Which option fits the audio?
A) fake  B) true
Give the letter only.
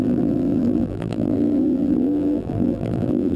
A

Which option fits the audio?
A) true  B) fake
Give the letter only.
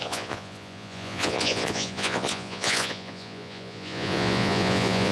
B